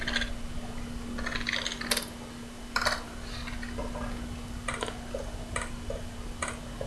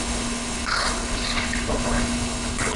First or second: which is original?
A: first